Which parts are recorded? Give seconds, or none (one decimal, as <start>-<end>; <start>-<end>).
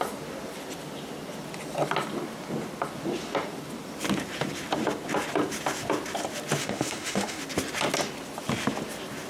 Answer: 0.0-6.6; 7.4-9.3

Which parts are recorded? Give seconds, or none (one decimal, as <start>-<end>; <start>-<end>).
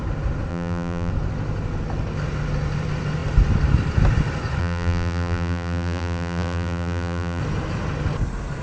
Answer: 0.0-0.5; 1.1-4.6; 7.4-8.6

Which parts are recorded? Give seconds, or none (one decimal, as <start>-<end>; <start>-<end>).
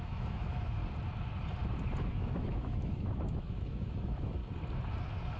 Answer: 0.8-2.0; 4.4-5.4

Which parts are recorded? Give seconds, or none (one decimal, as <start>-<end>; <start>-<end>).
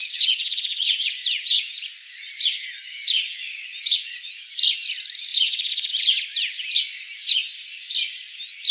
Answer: 4.3-5.3; 6.0-8.7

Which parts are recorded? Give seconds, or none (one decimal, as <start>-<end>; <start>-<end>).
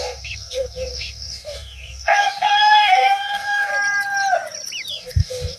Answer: 3.7-4.9